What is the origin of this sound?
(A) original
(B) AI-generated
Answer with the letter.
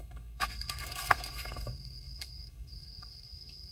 B